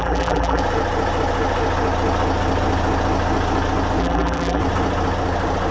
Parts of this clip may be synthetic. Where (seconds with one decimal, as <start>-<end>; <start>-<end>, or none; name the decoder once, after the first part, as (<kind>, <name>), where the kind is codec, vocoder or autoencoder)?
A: 0.0-0.6 (vocoder, BigVGAN v2); 4.0-4.6